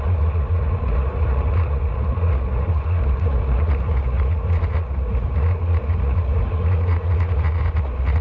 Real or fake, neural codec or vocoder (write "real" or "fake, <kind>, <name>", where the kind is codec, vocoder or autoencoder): fake, vocoder, Vocos